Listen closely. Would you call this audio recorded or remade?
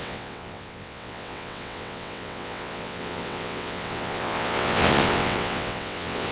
remade